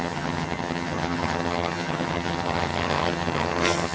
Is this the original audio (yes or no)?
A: no